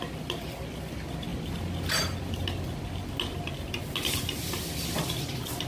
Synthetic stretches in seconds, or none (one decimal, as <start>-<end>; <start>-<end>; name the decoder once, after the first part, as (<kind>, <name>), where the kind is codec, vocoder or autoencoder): none